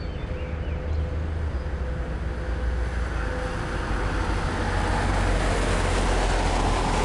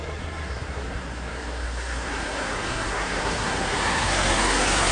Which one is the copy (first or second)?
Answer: second